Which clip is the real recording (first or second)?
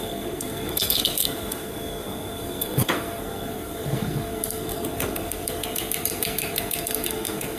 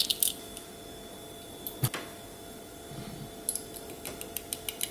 second